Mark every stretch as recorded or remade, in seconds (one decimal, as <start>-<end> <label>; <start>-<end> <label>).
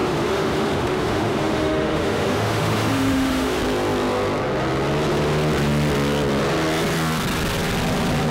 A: 0.0-3.6 remade; 3.6-8.3 recorded